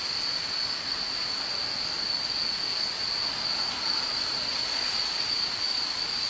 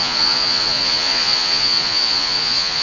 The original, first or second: first